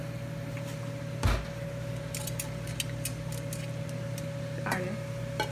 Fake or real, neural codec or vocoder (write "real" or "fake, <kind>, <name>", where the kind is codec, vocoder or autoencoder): real